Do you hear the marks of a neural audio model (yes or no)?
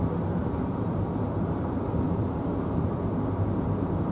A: no